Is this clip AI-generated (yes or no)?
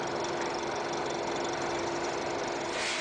no